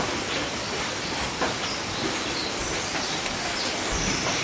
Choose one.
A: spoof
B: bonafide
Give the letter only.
A